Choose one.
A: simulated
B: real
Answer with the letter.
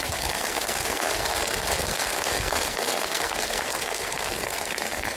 A